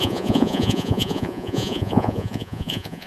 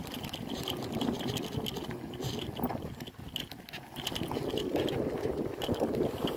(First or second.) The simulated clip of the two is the first